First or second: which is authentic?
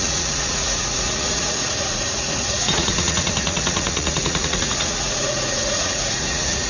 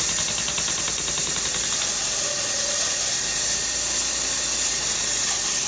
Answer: second